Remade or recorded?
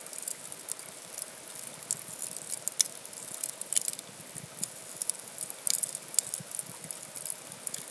recorded